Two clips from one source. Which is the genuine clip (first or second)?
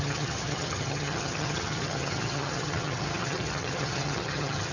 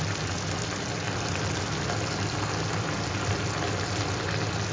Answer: second